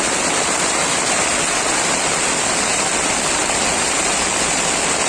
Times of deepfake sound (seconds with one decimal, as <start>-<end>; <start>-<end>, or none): none